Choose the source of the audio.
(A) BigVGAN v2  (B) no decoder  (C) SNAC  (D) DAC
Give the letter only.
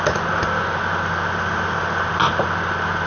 B